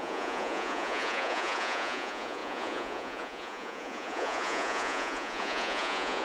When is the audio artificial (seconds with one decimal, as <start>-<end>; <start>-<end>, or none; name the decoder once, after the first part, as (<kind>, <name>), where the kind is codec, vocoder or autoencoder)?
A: 0.0-6.2 (vocoder, Vocos)